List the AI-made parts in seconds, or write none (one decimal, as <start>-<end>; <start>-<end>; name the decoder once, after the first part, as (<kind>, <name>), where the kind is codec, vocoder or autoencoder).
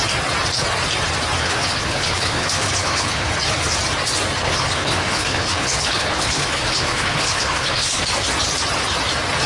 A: 1.4-3.3 (codec, HILCodec); 4.4-8.0